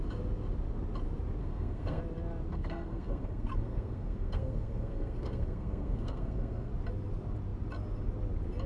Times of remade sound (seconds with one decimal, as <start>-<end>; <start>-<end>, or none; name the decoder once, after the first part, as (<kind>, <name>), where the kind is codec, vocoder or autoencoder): 1.4-2.0 (codec, SNAC); 2.5-6.7